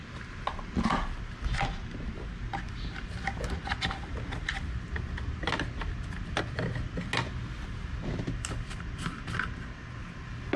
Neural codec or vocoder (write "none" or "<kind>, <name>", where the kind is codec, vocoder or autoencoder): none